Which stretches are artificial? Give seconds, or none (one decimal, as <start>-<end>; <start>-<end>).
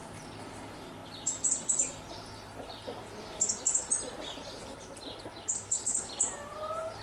none